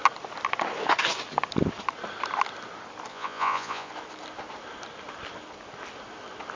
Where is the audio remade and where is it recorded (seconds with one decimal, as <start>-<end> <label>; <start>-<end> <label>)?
0.0-3.1 recorded; 3.1-3.9 remade; 3.9-6.6 recorded